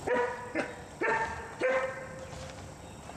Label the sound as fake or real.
real